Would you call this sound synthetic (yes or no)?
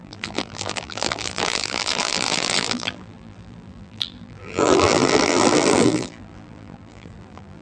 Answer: yes